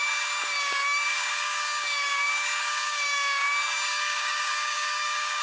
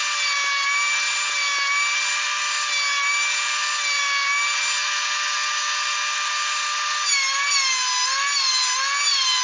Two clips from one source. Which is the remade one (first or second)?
first